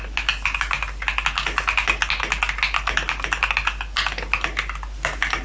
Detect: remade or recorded recorded